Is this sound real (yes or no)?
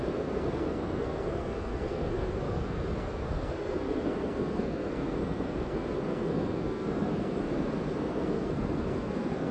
no